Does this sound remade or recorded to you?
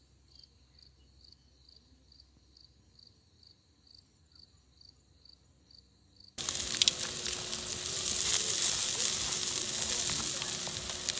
recorded